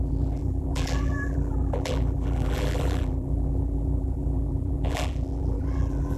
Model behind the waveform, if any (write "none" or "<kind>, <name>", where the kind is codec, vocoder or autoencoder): vocoder, BigVGAN v2